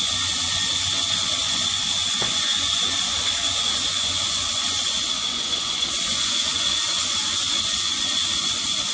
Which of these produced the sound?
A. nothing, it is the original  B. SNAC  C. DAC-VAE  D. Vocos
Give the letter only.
D